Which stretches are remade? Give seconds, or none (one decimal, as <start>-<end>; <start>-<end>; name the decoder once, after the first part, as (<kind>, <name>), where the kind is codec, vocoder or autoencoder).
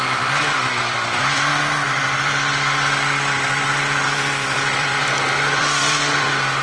0.0-6.6 (vocoder, BigVGAN v2)